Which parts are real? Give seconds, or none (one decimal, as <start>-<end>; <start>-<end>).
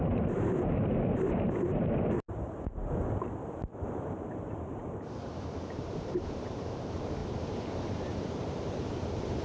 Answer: 2.8-3.9